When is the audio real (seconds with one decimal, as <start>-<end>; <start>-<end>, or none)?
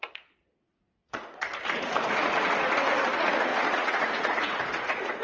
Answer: none